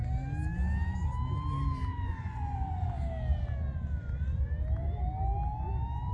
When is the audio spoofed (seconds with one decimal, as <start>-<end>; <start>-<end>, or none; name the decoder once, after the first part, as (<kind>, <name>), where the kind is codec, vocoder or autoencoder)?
1.9-3.0 (vocoder, Vocos)